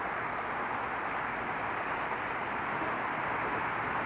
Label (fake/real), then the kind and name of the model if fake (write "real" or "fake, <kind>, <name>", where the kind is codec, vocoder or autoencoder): real